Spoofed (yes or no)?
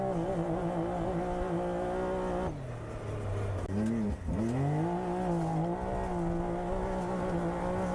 no